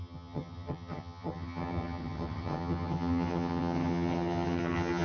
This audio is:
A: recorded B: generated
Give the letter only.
B